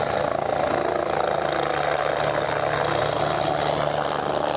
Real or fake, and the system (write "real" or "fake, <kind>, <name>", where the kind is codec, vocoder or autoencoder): real